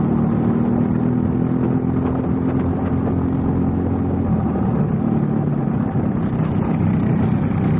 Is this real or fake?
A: real